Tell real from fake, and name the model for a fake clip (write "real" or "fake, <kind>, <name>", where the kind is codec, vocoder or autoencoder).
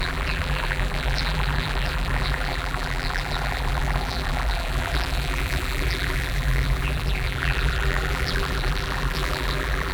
fake, vocoder, BigVGAN v2